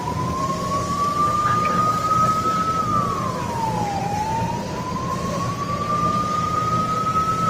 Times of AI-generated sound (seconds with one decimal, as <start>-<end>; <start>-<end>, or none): 0.0-1.2; 2.1-2.9; 4.0-5.4; 7.0-7.5